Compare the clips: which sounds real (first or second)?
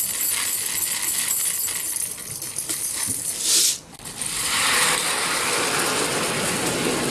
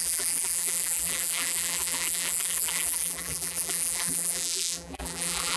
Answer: first